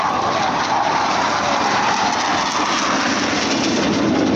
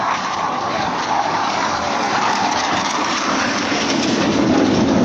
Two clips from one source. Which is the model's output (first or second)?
second